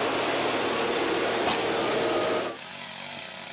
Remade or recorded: recorded